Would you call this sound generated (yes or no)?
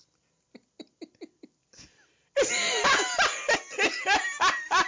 no